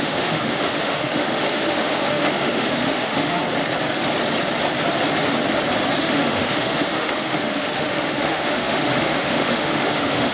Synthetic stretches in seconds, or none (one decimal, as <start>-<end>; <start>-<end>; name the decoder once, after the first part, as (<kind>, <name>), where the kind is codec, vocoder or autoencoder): 0.0-3.4 (autoencoder, DAC-VAE); 6.0-10.3